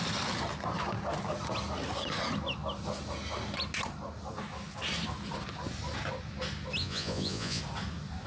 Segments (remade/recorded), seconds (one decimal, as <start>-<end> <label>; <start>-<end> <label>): 0.0-6.8 recorded; 6.8-7.6 remade; 7.6-8.3 recorded